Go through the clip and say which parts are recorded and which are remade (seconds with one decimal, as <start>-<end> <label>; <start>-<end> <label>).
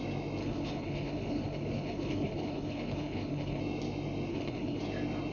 0.0-0.4 recorded; 0.4-3.6 remade; 3.6-4.3 recorded; 4.3-4.8 remade; 4.8-5.3 recorded